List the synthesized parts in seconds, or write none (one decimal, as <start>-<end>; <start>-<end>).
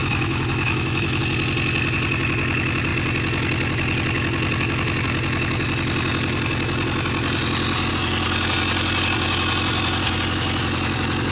0.0-1.2